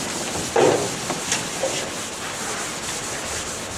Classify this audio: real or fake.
real